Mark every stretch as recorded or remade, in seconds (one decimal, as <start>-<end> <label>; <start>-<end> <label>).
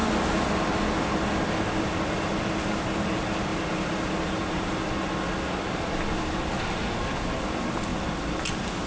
0.0-8.9 recorded